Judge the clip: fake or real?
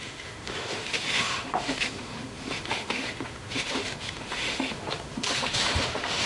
fake